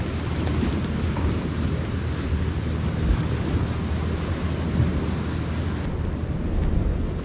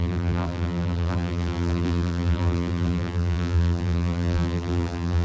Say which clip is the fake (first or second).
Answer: second